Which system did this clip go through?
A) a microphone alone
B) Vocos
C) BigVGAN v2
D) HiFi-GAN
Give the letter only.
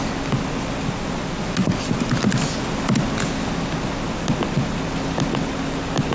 A